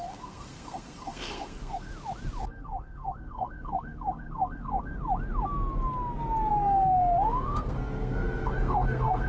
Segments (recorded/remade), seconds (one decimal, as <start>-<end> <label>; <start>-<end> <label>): 0.0-1.9 remade; 1.9-2.4 recorded; 2.4-4.9 remade; 4.9-6.5 recorded; 6.5-9.3 remade